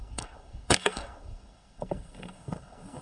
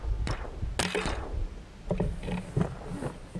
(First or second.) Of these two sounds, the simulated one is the first